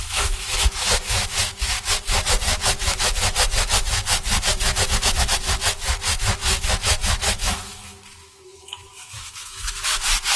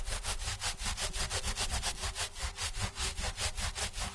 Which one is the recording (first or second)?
second